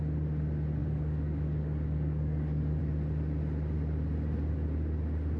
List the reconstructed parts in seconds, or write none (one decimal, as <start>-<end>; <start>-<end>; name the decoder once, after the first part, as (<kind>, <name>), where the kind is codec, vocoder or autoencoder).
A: 0.8-2.8 (codec, DAC)